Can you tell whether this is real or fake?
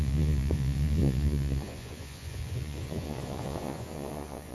fake